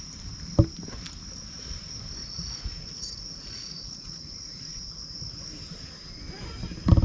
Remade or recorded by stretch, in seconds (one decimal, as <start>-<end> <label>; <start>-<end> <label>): 0.0-2.2 recorded; 2.2-5.5 remade; 5.5-7.0 recorded